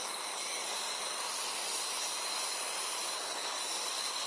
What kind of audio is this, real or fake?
real